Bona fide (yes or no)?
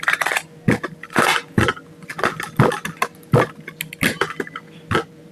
yes